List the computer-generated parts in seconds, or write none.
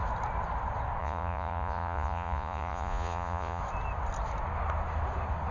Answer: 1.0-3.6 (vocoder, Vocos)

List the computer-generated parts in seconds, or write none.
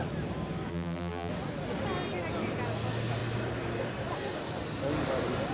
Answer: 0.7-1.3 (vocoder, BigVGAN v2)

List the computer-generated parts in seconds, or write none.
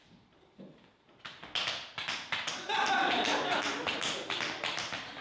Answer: none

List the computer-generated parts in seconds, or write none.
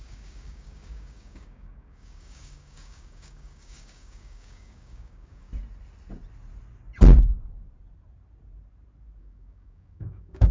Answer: 0.0-5.5 (codec, DAC); 9.2-10.5